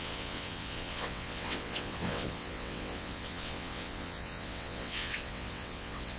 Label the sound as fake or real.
fake